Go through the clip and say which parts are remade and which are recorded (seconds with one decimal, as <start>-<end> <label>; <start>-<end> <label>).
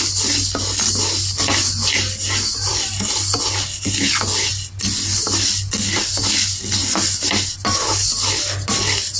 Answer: 0.0-9.2 recorded